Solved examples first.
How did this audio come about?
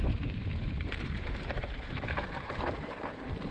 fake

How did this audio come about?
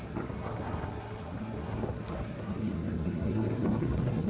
fake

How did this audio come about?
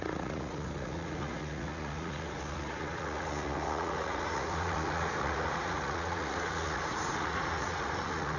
fake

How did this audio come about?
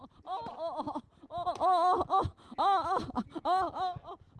real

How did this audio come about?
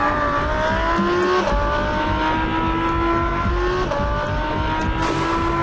real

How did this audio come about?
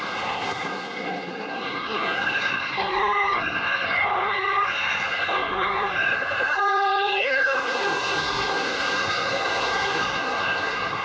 fake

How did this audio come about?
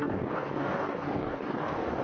fake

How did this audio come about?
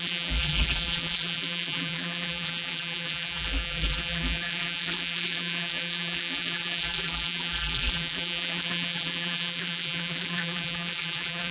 fake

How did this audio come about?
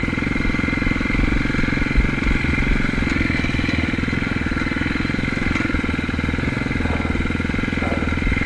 real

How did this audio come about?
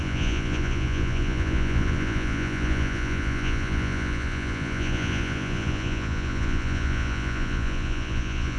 fake